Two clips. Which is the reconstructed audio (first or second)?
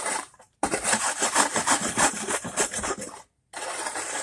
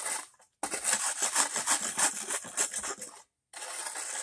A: first